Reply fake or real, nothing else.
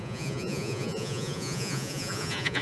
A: fake